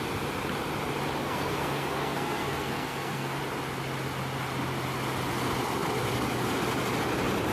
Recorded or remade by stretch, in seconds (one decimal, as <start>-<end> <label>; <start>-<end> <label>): 0.0-1.2 recorded; 1.2-3.4 remade; 3.4-7.5 recorded